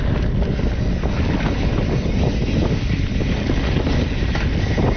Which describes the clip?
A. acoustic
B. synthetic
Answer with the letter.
A